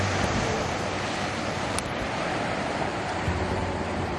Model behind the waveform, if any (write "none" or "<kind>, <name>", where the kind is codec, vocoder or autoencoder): vocoder, BigVGAN v2